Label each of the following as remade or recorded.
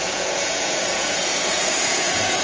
remade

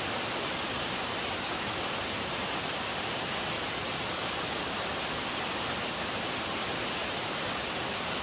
recorded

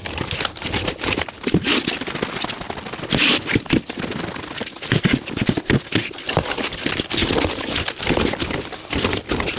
recorded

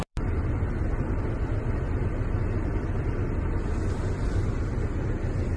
remade